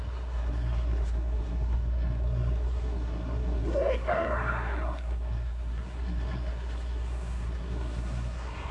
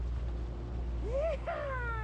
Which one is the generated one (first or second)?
first